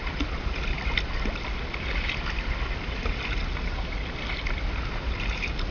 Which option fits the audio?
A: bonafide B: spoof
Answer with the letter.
A